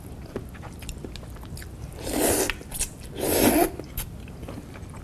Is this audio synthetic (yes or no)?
no